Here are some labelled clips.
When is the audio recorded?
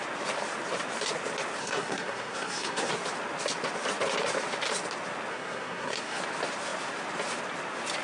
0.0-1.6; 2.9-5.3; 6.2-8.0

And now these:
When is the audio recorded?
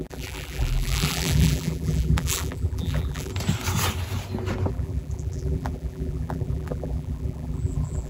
3.3-4.7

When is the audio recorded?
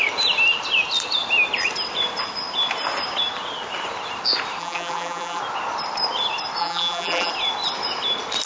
0.0-4.6; 5.4-6.6; 7.3-8.5